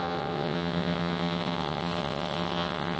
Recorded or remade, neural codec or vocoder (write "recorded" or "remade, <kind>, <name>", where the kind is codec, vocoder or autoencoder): remade, vocoder, WaveNeXt